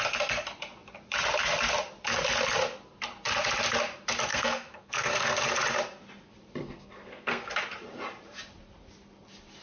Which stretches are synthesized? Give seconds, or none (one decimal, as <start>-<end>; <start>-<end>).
4.3-5.5; 6.6-7.5